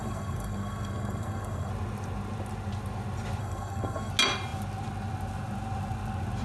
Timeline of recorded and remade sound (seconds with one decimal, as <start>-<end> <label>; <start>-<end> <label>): 0.0-1.7 remade; 1.7-3.4 recorded; 3.4-4.1 remade; 4.1-6.4 recorded